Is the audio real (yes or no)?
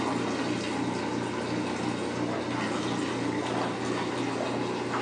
yes